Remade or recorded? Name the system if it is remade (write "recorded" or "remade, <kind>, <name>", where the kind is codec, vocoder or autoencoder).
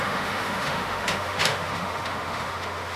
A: remade, autoencoder, DAC-VAE